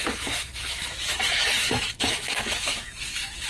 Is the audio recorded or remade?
remade